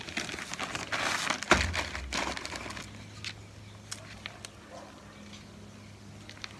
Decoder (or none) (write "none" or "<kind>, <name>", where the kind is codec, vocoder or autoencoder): none